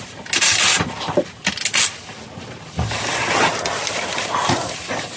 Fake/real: real